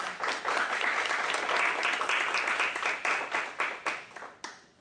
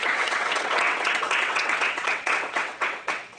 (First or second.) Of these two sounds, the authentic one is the first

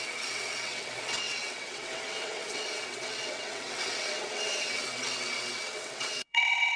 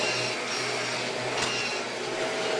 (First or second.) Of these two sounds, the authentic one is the second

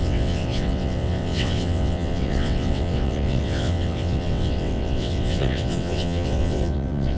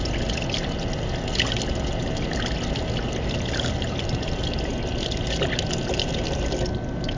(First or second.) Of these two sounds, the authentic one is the second